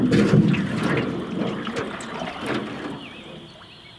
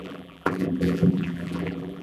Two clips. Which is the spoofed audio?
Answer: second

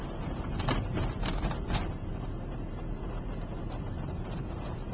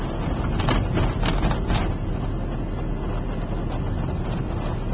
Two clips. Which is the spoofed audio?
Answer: first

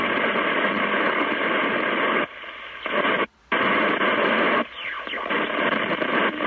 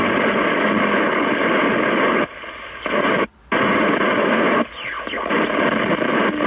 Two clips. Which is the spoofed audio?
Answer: first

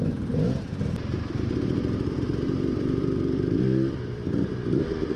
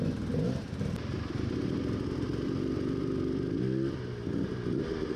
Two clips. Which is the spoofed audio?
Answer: first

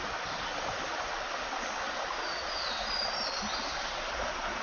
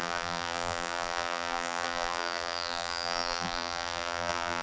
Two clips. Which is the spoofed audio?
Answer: second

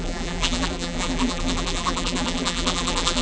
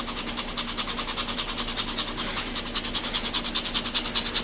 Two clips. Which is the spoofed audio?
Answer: first